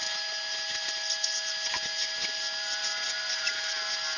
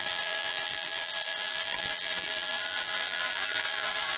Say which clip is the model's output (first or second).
second